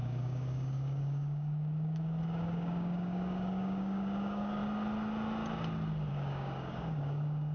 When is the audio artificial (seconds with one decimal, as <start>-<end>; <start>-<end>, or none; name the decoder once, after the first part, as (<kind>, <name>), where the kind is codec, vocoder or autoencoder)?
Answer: 0.0-4.6 (codec, DAC); 6.1-7.5